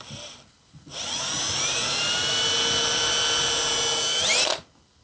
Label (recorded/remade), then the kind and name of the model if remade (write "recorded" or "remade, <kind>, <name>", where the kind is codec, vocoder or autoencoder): recorded